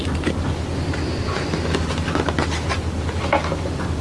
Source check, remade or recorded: recorded